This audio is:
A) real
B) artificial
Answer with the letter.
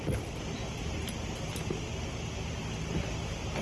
A